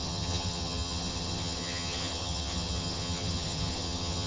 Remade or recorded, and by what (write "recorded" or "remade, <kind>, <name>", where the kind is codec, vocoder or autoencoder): remade, vocoder, HiFi-GAN